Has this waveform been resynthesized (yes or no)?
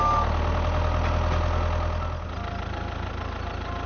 no